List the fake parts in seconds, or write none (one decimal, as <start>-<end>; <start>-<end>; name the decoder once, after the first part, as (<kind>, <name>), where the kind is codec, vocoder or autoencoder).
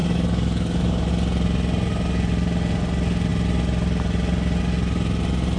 0.0-1.1 (codec, DAC)